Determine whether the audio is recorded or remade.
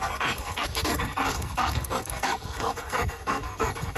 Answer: remade